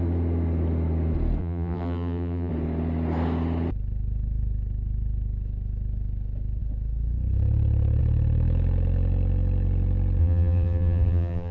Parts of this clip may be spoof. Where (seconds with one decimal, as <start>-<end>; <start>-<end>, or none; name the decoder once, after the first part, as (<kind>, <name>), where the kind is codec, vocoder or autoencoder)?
1.4-2.5 (vocoder, BigVGAN v2); 10.2-11.5